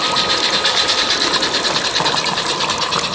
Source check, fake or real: real